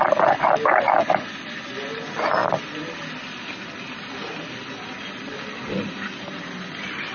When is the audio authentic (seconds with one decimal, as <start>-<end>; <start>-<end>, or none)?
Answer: 0.0-7.1